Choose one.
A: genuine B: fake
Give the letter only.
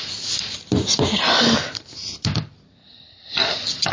A